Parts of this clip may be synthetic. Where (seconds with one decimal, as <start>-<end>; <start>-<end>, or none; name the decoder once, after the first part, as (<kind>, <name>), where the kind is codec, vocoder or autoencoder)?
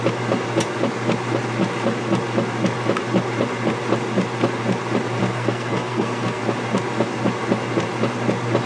5.2-6.4 (codec, SNAC)